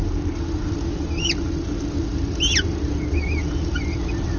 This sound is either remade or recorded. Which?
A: recorded